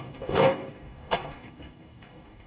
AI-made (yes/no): yes